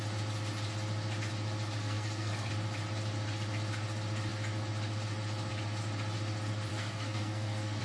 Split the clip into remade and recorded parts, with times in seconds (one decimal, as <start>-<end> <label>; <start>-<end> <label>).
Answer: 0.0-1.8 recorded; 1.8-2.5 remade; 2.5-6.7 recorded; 6.7-7.8 remade